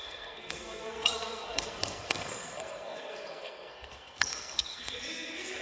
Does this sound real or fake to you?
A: fake